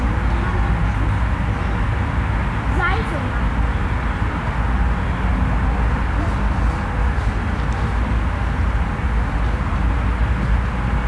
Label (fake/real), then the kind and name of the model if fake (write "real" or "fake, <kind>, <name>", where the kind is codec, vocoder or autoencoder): real